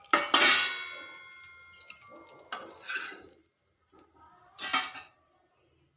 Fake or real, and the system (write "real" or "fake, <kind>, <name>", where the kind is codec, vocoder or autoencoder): real